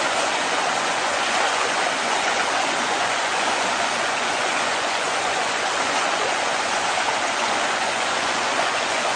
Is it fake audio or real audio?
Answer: fake